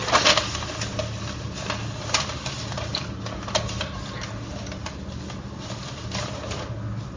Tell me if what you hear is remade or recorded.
recorded